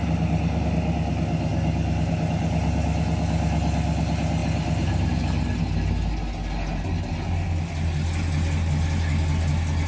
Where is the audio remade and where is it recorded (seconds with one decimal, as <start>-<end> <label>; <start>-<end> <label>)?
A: 0.0-4.4 recorded; 4.4-5.1 remade; 5.1-9.9 recorded